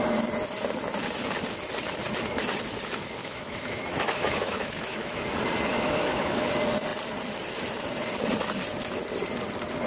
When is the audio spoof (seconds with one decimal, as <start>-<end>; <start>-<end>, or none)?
3.2-5.2; 5.7-6.5